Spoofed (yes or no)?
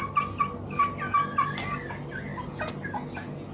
no